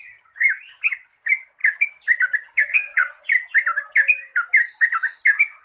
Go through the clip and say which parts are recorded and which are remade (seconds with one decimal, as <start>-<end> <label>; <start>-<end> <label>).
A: 0.0-2.7 recorded; 2.7-3.2 remade; 3.2-5.6 recorded

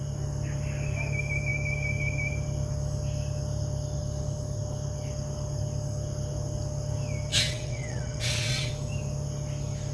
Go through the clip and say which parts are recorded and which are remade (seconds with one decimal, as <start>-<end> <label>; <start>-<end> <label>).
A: 0.0-7.3 recorded; 7.3-8.7 remade; 8.7-9.9 recorded

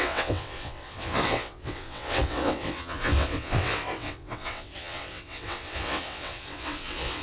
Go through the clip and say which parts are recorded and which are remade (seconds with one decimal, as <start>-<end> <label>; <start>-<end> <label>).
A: 0.0-7.2 remade

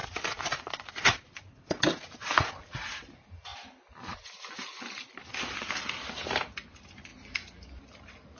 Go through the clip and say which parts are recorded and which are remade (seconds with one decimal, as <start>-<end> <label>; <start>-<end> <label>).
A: 0.0-8.4 recorded